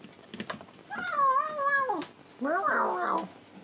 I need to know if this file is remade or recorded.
recorded